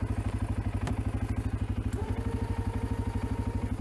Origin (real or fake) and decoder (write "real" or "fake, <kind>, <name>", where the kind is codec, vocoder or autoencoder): real